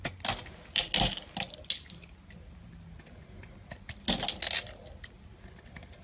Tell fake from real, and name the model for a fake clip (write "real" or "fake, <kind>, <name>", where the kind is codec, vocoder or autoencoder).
real